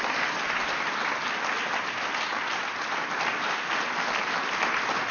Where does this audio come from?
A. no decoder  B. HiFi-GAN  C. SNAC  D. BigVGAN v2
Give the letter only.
A